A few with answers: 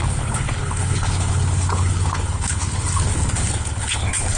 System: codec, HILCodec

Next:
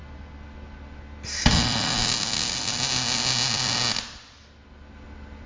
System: none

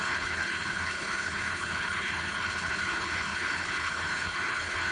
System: codec, HILCodec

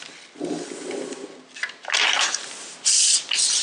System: none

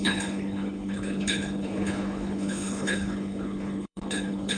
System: codec, HILCodec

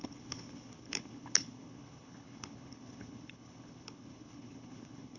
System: codec, HILCodec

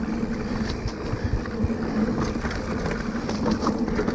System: none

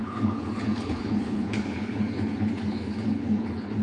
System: codec, HILCodec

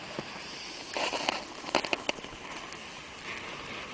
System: none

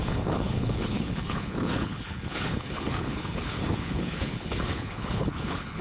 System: codec, HILCodec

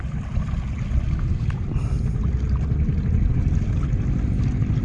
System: none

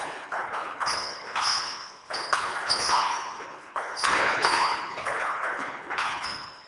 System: codec, HILCodec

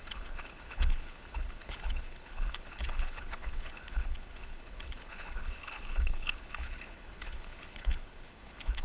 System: codec, HILCodec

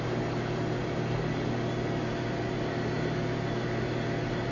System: none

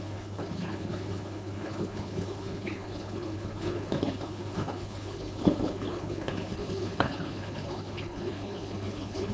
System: codec, HILCodec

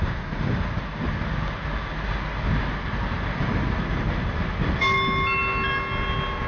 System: none